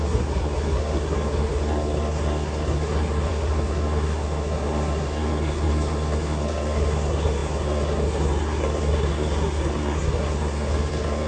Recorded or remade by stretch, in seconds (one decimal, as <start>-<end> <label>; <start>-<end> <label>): 0.0-11.3 remade